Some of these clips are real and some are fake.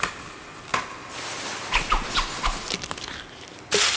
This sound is real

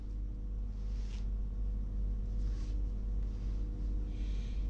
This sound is real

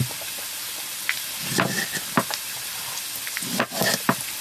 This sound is real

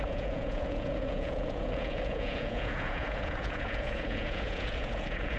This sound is fake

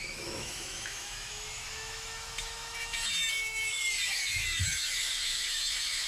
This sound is fake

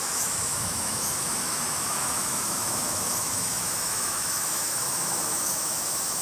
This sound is fake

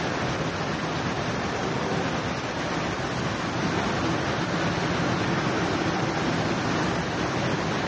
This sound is real